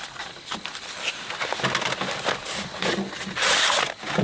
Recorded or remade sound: recorded